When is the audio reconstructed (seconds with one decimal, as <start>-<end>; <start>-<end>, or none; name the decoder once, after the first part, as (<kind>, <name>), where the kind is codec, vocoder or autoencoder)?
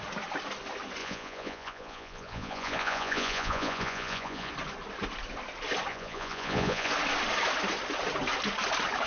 1.0-4.5 (vocoder, Vocos); 5.9-6.9